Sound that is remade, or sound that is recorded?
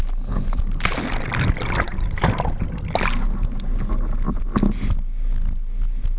recorded